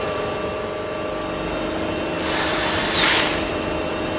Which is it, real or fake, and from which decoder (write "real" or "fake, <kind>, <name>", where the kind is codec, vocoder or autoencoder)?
fake, vocoder, BigVGAN v2